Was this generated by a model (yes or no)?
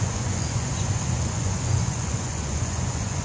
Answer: yes